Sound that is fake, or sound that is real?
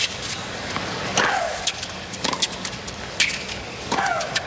fake